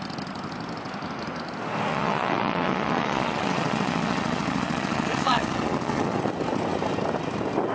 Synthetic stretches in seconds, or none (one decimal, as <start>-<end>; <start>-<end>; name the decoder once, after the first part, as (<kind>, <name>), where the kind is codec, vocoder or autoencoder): 1.9-6.3 (vocoder, Vocos)